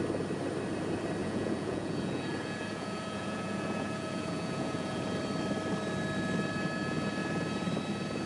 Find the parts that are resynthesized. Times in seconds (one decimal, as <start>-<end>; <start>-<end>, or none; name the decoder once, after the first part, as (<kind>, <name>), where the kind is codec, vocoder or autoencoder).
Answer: 1.2-5.2 (vocoder, Vocos)